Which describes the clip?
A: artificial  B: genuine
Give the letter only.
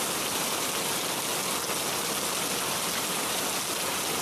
B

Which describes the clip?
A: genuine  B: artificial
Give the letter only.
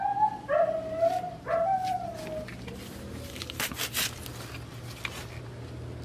A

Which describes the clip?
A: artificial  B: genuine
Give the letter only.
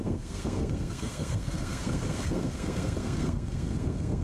A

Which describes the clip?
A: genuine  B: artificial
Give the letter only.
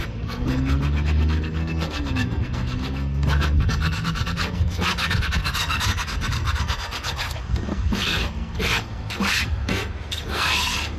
B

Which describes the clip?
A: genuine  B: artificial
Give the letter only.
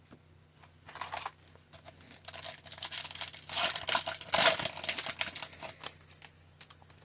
A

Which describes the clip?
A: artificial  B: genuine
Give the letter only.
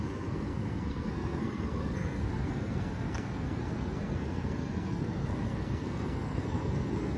A